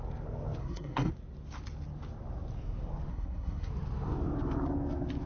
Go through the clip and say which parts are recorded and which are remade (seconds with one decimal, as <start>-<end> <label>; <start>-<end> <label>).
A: 0.0-0.6 recorded; 0.6-1.1 remade; 1.1-3.1 recorded; 3.1-3.7 remade; 3.7-5.3 recorded